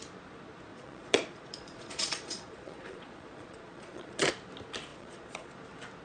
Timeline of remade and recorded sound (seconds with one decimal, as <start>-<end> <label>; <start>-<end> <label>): 0.0-0.7 recorded; 0.7-4.3 remade; 4.3-4.9 recorded; 4.9-5.5 remade; 5.5-6.0 recorded